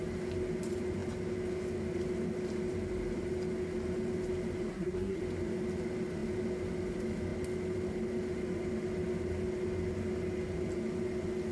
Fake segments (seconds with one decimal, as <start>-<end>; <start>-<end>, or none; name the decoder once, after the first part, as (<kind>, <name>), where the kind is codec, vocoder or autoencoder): 4.7-5.2 (codec, SNAC)